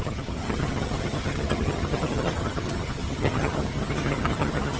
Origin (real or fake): fake